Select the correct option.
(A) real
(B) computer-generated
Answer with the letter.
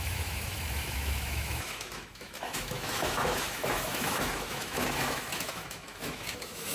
B